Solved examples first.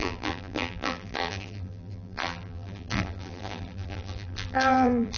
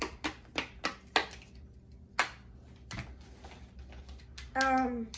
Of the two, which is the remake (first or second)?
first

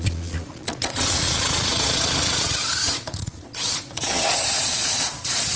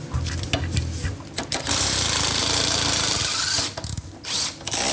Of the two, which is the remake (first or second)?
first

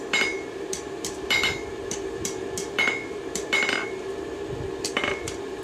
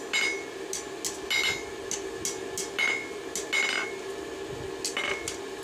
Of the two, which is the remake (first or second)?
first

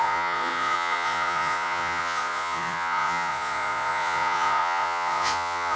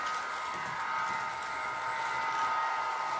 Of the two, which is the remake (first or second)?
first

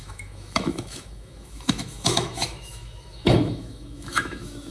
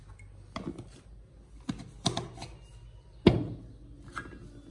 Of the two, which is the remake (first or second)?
first